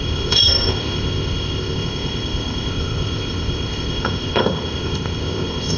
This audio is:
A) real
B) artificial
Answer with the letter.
B